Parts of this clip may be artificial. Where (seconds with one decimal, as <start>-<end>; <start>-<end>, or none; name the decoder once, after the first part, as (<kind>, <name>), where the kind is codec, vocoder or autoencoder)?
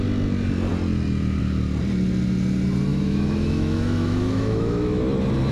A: 2.9-5.0 (autoencoder, DAC-VAE)